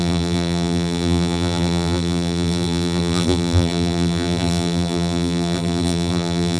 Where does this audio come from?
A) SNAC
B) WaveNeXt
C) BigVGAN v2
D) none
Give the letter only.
C